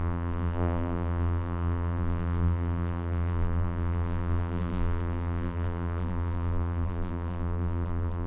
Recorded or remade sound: remade